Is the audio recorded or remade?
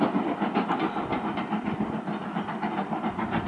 recorded